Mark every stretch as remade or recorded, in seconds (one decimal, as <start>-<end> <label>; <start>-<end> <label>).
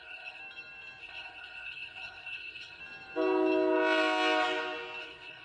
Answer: 0.0-0.4 remade; 0.4-1.0 recorded; 1.0-2.8 remade; 2.8-5.0 recorded; 5.0-5.4 remade